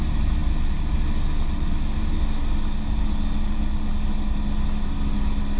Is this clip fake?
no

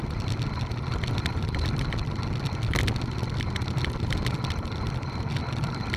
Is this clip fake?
no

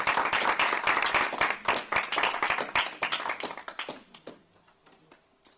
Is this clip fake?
no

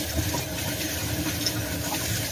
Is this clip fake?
no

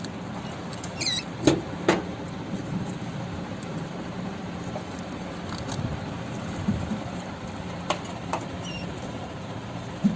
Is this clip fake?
yes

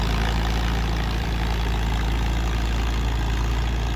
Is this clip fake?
yes